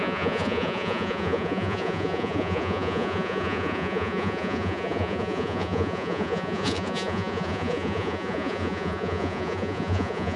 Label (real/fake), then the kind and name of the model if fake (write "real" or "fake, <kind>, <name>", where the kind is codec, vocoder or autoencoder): fake, vocoder, Vocos